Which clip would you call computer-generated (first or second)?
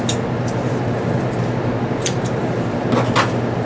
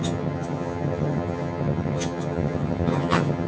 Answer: second